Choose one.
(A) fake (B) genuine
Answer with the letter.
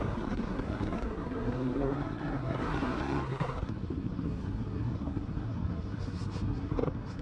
A